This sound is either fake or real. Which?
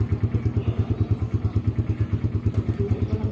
real